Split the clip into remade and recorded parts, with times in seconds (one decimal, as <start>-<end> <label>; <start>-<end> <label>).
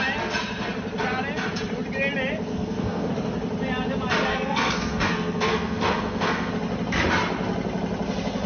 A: 0.0-2.5 recorded; 2.5-3.1 remade; 3.1-4.3 recorded; 4.3-6.5 remade; 6.5-8.5 recorded